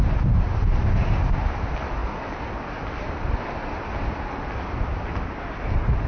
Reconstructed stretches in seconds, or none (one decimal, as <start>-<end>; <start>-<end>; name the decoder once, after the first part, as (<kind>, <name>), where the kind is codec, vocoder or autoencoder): none